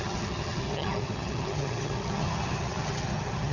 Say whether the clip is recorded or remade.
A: remade